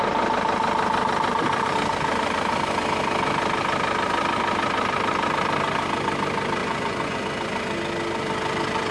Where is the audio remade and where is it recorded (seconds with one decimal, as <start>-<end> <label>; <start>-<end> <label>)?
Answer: 0.0-6.6 recorded; 6.6-7.2 remade; 7.2-8.9 recorded